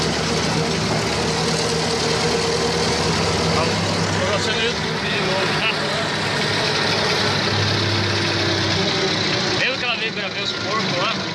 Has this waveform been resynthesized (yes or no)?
no